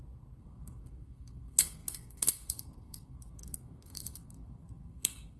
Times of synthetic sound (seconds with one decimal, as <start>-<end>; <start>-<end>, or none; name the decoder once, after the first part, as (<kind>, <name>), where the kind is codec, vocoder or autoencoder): 0.0-5.4 (codec, SNAC)